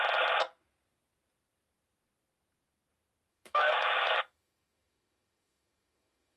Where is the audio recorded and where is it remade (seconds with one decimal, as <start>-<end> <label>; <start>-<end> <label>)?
0.0-3.3 recorded; 3.3-6.4 remade